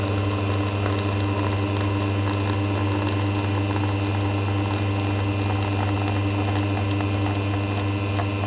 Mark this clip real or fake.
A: real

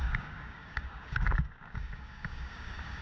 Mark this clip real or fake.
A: fake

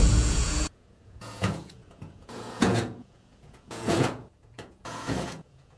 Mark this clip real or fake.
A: fake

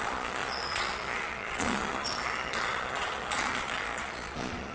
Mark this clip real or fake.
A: fake